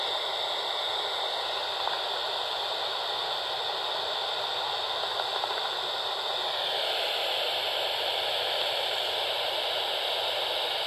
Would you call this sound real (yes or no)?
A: yes